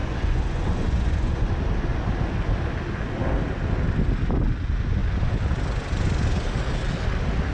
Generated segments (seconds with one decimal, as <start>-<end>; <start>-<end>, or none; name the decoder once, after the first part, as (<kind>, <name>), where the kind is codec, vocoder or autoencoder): 0.0-1.5 (vocoder, Vocos)